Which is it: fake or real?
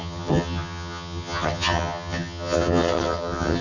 fake